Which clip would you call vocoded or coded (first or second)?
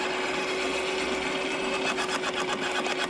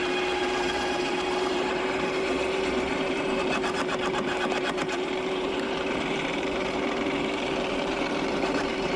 second